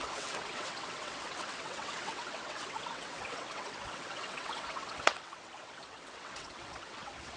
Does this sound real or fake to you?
fake